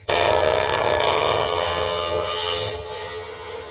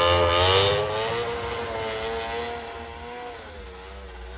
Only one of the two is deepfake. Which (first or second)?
first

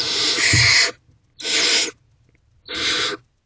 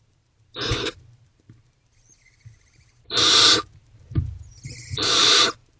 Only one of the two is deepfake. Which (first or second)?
second